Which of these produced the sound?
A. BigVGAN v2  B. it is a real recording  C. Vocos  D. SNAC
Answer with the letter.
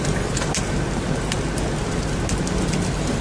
B